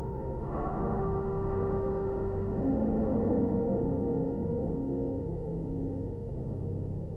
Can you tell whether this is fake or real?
fake